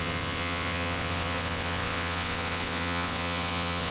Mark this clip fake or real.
fake